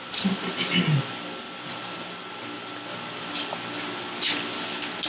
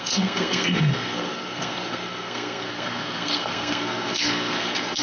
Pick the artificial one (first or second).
second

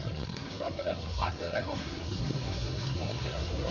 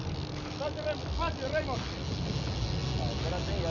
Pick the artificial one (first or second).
first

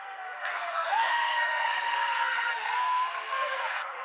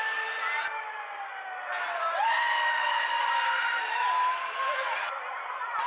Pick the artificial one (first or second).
first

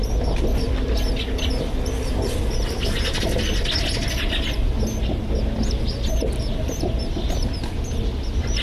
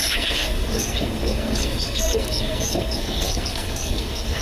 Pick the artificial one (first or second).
second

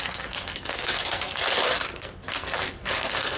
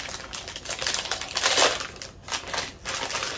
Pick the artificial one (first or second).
first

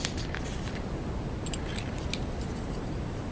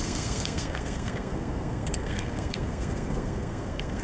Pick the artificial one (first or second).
second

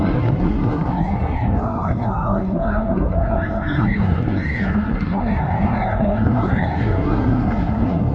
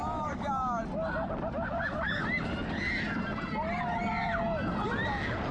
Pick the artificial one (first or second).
first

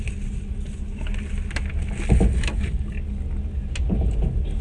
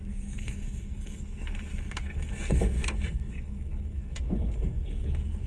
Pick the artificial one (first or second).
second